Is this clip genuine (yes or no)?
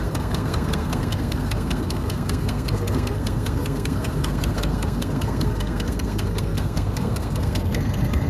no